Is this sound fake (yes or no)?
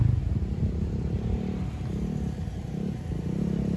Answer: no